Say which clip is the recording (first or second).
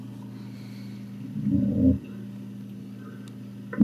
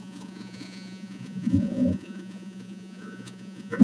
first